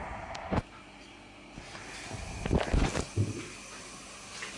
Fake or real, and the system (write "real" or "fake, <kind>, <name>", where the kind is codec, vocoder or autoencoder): real